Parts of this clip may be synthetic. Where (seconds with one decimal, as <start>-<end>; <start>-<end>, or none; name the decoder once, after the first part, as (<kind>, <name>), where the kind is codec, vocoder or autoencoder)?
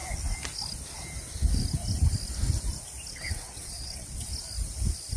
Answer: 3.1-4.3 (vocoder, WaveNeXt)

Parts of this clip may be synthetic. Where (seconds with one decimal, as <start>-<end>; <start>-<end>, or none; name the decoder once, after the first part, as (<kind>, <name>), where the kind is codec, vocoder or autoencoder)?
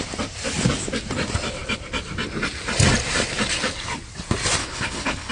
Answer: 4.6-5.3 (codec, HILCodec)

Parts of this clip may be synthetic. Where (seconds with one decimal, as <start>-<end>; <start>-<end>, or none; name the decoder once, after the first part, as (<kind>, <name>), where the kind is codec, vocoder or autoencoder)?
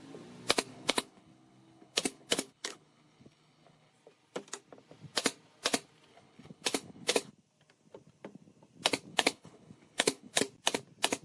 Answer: 0.7-3.9 (codec, HILCodec); 6.1-7.3; 9.1-10.4